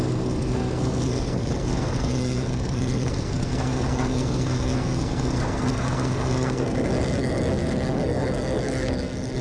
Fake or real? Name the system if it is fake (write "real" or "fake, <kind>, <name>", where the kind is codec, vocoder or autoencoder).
fake, codec, SNAC